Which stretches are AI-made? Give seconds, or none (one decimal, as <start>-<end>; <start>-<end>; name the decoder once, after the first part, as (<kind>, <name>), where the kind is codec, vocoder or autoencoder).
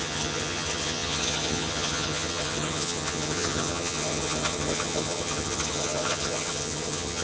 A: 0.0-7.2 (vocoder, HiFi-GAN)